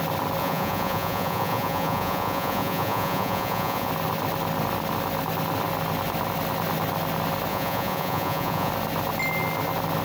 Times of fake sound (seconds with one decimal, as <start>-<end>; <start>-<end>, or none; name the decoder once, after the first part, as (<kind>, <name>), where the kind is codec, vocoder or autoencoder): 0.4-3.9 (vocoder, Vocos); 7.5-8.7